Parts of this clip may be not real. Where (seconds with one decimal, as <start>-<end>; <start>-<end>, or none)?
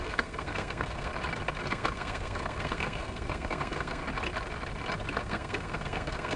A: 0.0-1.1; 1.7-4.0; 5.2-6.4